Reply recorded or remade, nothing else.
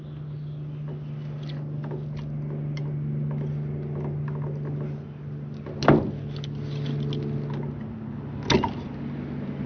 recorded